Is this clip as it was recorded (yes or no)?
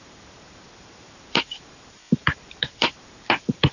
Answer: no